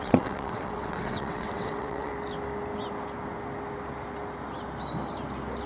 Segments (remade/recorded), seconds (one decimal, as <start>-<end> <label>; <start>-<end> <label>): 0.0-2.1 remade; 2.1-5.7 recorded